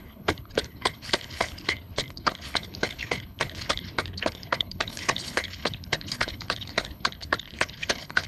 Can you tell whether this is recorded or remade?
remade